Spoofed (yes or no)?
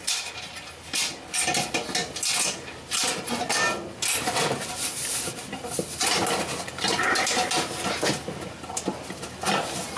no